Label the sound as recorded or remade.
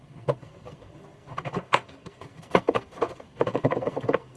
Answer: remade